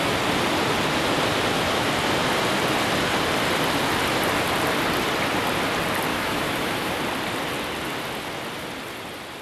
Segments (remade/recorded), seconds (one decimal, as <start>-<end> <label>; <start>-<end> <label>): 0.0-6.1 recorded; 6.1-7.0 remade; 7.0-9.4 recorded